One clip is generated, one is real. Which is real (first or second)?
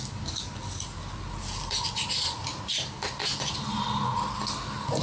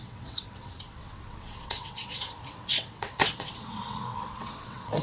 first